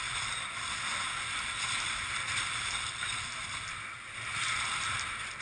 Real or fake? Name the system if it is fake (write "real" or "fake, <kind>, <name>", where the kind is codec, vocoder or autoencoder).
real